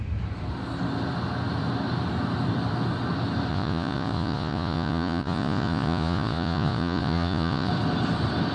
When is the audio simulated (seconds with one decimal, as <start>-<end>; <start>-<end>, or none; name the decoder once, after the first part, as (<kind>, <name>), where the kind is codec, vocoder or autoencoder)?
3.5-7.7 (vocoder, Vocos)